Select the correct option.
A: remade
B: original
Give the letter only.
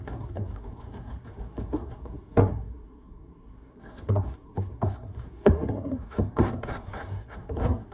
A